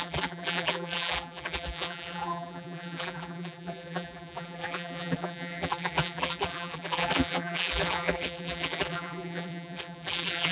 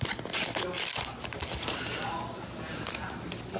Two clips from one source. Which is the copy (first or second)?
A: first